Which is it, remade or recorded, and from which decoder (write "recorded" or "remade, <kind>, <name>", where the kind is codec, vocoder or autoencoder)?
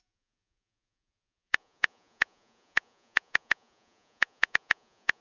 remade, vocoder, Vocos